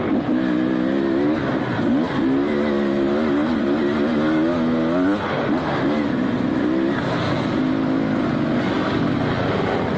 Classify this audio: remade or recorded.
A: recorded